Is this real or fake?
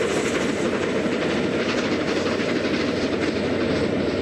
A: real